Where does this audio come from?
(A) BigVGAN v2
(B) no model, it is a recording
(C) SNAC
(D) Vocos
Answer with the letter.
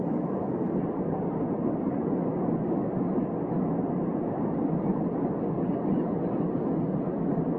B